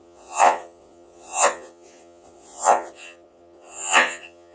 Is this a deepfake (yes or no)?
yes